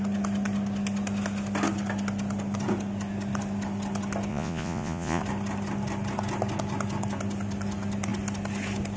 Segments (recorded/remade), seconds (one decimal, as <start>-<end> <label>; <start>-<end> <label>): 0.0-4.3 recorded; 4.3-5.2 remade; 5.2-9.0 recorded